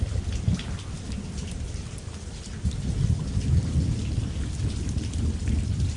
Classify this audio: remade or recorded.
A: recorded